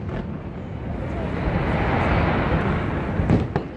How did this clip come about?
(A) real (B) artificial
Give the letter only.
A